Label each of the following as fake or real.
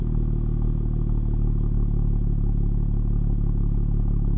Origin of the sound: real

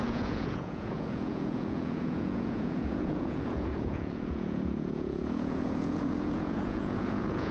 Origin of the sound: fake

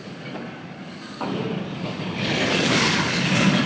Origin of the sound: fake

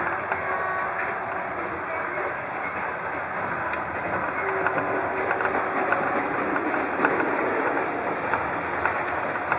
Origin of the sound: real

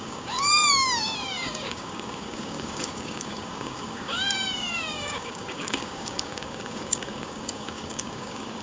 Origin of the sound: fake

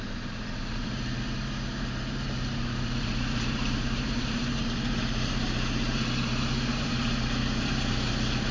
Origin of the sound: fake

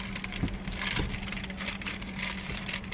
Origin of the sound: real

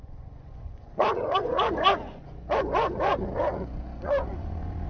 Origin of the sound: fake